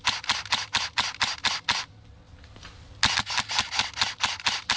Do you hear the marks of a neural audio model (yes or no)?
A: no